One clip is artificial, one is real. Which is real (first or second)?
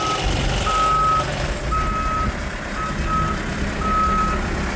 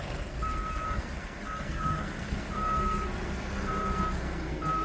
first